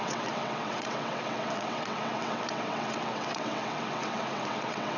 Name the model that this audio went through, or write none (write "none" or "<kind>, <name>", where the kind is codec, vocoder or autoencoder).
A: vocoder, WaveNeXt